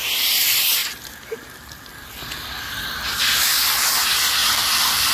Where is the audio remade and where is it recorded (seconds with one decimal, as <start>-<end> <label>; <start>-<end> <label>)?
0.0-4.4 recorded; 4.4-5.1 remade